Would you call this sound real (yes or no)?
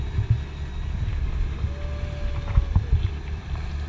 yes